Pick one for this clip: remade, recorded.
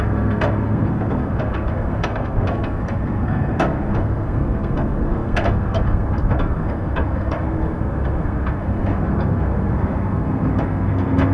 remade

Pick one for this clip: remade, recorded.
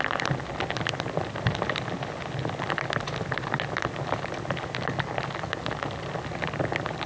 recorded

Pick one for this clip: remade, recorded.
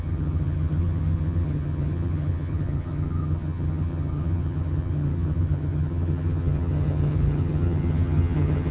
remade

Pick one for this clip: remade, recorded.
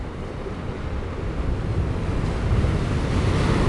recorded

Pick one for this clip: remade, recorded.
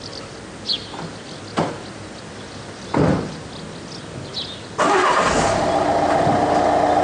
recorded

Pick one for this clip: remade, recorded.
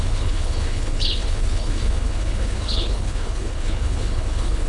remade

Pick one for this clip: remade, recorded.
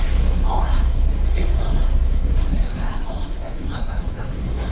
remade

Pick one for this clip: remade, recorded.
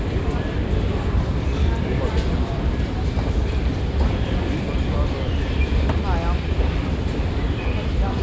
remade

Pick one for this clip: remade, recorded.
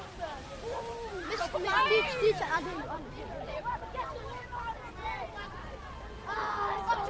remade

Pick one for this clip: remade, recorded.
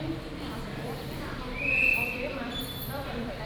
remade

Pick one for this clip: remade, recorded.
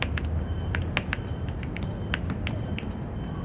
recorded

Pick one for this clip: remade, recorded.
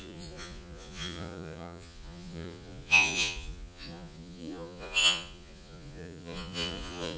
remade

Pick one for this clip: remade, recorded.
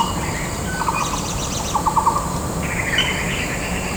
recorded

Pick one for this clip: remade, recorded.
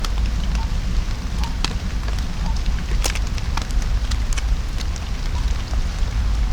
recorded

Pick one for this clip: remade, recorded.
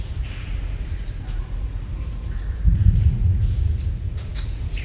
remade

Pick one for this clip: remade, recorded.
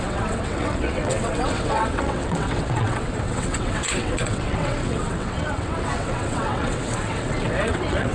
remade